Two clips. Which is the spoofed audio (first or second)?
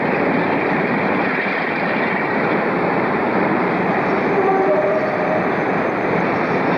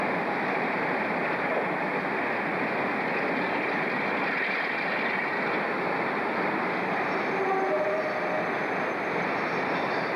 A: first